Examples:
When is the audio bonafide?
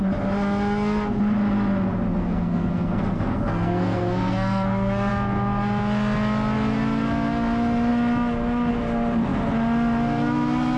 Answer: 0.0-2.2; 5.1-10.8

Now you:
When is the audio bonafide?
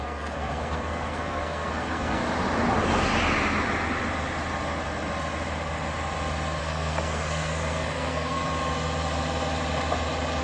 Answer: 2.2-6.6; 8.4-10.4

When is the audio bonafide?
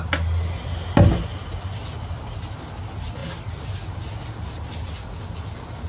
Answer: 0.0-5.9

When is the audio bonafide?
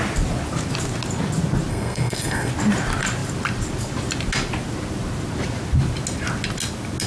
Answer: 0.0-1.7; 2.5-7.1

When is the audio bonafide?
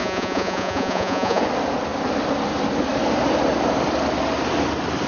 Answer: 1.4-5.1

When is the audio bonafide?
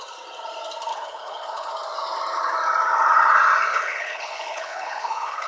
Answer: 0.0-0.9; 1.7-3.7